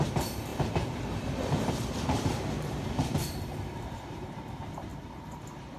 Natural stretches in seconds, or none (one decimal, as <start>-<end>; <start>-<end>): none